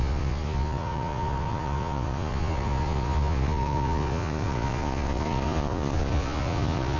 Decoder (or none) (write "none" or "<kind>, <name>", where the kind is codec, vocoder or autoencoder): vocoder, Vocos